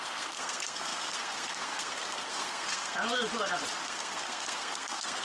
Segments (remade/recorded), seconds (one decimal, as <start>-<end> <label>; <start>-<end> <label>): 0.0-3.0 remade; 3.0-3.8 recorded; 3.8-5.2 remade